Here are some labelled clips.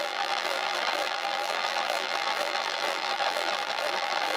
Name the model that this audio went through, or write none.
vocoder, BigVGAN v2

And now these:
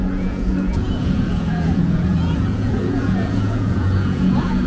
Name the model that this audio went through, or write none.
vocoder, Vocos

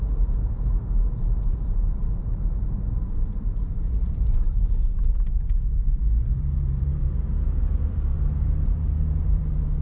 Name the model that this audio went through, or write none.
vocoder, BigVGAN v2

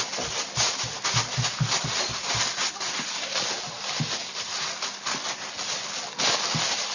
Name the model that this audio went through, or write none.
none